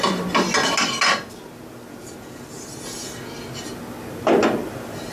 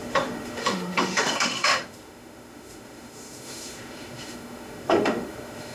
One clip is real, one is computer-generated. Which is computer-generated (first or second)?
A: second